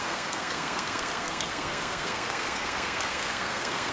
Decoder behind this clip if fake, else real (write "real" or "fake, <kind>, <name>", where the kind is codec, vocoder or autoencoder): fake, codec, SNAC